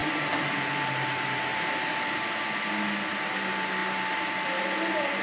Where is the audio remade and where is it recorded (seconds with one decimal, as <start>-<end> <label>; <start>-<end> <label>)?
0.0-5.2 recorded